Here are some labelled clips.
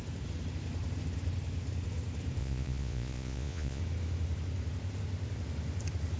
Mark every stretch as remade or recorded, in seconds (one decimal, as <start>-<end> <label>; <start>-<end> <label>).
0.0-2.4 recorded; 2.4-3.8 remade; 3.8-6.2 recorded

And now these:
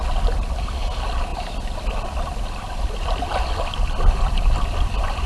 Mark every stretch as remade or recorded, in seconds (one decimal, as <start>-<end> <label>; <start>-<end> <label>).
0.0-5.3 recorded

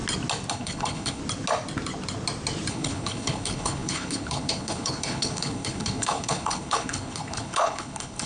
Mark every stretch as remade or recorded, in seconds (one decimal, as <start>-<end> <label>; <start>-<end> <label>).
0.0-0.5 recorded; 0.5-1.2 remade; 1.2-2.7 recorded; 2.7-8.3 remade

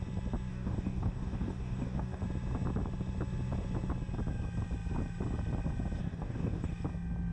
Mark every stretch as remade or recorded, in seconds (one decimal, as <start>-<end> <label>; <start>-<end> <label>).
0.0-0.5 recorded; 0.5-2.2 remade; 2.2-6.0 recorded; 6.0-6.7 remade; 6.7-7.3 recorded

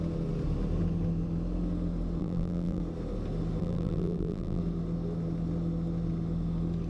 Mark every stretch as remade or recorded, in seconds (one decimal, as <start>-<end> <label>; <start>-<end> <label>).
0.0-2.2 recorded; 2.2-2.8 remade; 2.8-3.6 recorded; 3.6-4.6 remade; 4.6-6.9 recorded

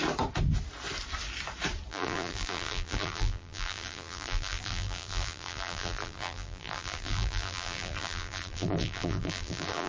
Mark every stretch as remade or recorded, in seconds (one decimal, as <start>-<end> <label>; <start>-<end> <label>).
0.0-1.9 recorded; 1.9-9.9 remade

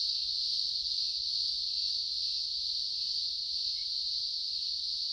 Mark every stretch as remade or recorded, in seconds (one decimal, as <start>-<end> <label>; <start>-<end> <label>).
0.0-5.1 recorded

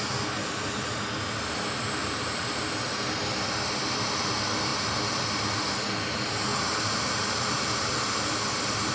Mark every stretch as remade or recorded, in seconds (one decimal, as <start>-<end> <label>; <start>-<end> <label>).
0.0-0.4 recorded; 0.4-1.0 remade; 1.0-2.0 recorded; 2.0-2.6 remade; 2.6-6.5 recorded; 6.5-8.0 remade; 8.0-8.9 recorded